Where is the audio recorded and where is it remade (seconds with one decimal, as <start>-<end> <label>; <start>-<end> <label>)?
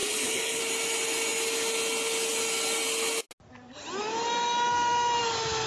0.0-0.6 remade; 0.6-5.7 recorded